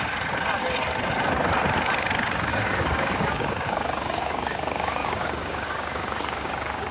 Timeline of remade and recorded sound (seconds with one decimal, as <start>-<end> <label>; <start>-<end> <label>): 0.0-2.5 recorded; 2.5-6.9 remade